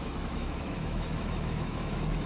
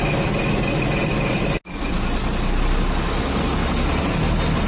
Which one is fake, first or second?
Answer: first